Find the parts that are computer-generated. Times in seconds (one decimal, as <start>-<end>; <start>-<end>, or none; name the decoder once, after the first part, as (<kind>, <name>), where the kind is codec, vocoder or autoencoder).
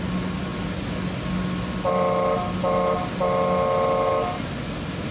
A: none